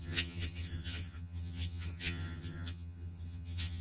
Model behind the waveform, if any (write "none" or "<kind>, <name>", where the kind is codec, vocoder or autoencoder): vocoder, HiFi-GAN